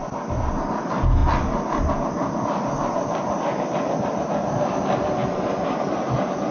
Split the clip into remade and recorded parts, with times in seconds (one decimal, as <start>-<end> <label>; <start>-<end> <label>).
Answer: 0.0-6.5 recorded